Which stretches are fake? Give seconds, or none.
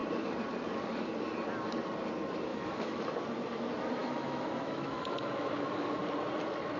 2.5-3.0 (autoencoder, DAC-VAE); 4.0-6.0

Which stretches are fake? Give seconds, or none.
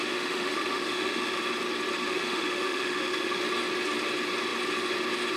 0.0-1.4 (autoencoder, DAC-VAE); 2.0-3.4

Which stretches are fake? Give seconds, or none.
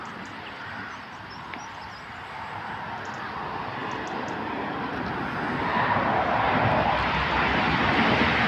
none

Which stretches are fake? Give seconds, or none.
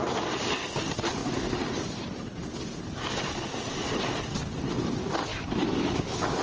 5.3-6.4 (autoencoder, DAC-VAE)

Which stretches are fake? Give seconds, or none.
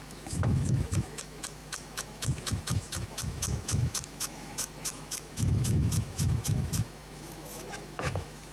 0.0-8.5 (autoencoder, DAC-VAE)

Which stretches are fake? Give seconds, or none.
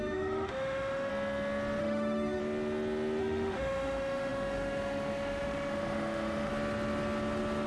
0.0-1.1 (autoencoder, DAC-VAE); 1.8-2.4; 3.2-6.5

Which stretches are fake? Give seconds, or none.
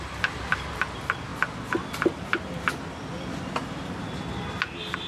none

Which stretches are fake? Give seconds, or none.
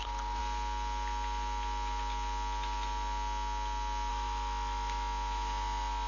0.0-0.4 (autoencoder, DAC-VAE); 4.1-6.1